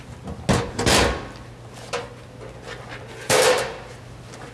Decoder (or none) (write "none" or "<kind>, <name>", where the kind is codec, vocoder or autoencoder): none